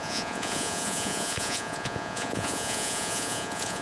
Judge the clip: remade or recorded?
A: remade